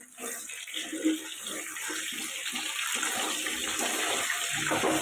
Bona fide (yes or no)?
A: yes